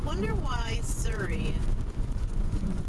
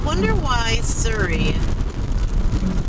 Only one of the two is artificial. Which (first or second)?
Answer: first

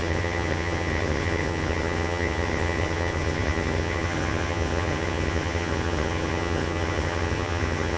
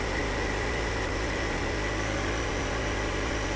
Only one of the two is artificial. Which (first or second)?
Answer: first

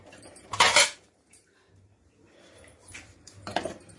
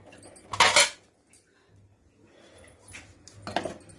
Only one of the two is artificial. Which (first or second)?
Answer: first